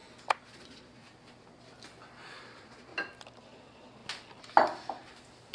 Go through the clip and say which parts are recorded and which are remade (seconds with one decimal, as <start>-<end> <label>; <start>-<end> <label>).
0.0-0.5 recorded; 0.5-1.0 remade; 1.0-2.3 recorded; 2.3-2.9 remade; 2.9-3.4 recorded; 3.4-4.0 remade; 4.0-5.5 recorded